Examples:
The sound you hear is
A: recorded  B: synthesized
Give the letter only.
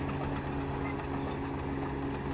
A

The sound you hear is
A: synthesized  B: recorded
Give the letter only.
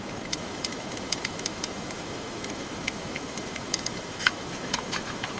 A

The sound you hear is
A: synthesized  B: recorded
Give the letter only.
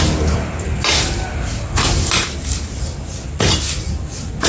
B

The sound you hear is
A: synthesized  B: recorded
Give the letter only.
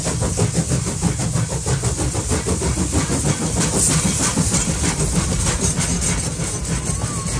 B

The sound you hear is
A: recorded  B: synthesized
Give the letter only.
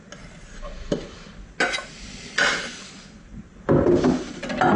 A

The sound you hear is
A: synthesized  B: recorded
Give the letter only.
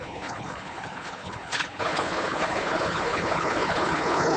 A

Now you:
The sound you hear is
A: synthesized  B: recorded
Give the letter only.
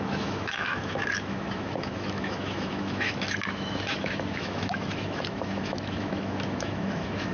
A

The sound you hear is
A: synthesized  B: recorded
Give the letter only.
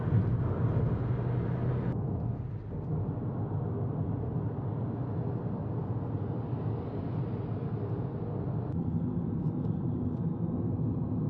B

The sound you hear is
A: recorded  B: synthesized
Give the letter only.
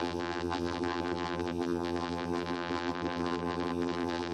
B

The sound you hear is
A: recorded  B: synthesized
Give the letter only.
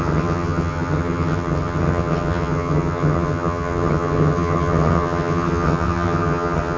B